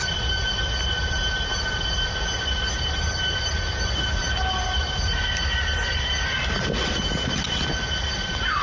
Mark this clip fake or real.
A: real